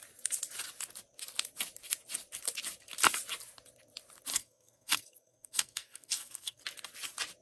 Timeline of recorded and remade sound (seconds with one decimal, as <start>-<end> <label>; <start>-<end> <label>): 0.0-4.3 recorded; 4.3-6.6 remade; 6.6-7.4 recorded